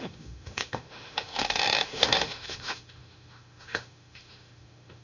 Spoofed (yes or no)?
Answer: yes